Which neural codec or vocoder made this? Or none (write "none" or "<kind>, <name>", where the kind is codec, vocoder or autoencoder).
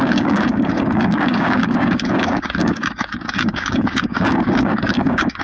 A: codec, DAC